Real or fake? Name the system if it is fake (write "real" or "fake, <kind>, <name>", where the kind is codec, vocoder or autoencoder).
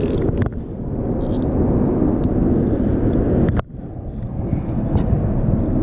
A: real